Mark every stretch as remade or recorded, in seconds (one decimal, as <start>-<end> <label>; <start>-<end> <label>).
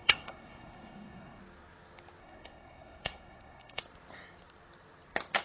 0.0-1.4 remade; 1.4-2.2 recorded; 2.2-3.8 remade; 3.8-5.4 recorded